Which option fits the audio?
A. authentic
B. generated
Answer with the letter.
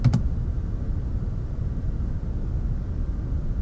A